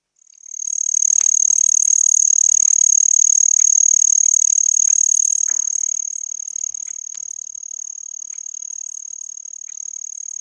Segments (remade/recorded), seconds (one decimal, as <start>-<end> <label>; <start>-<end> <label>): 0.0-10.4 recorded